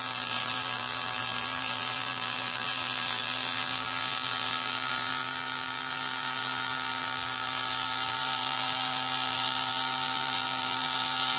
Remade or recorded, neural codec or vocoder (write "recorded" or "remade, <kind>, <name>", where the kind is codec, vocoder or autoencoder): remade, vocoder, BigVGAN v2